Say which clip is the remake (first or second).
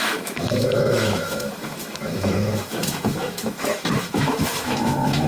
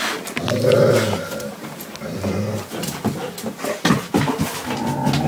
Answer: first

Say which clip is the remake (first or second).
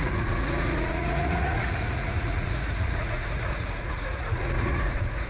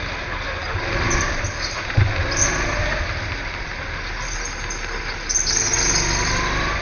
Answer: first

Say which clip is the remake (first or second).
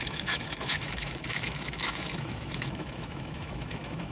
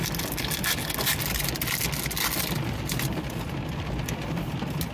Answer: first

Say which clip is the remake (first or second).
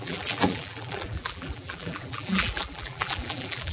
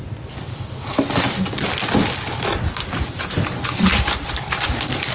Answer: first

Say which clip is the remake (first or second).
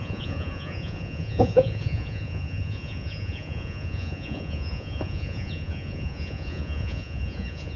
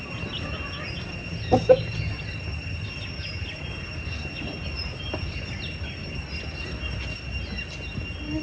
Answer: first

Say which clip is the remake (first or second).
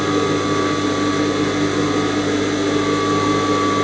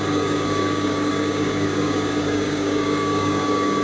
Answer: second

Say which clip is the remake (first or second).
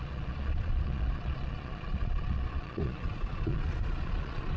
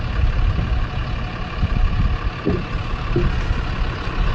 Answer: first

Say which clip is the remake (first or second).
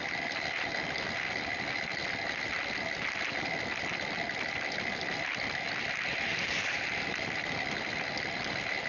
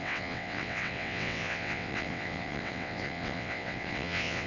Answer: second